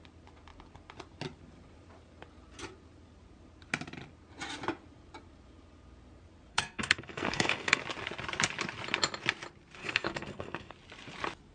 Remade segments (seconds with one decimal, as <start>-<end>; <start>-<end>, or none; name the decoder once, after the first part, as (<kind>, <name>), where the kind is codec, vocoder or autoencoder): 6.5-7.8 (codec, SNAC); 9.8-10.7